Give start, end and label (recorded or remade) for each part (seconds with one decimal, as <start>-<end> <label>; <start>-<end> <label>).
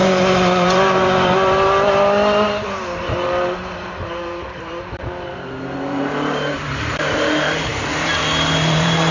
0.0-7.7 remade; 7.7-8.5 recorded; 8.5-9.1 remade